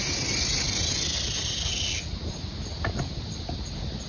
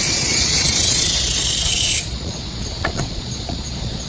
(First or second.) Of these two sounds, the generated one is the second